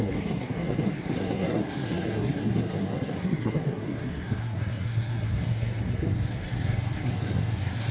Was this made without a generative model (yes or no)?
no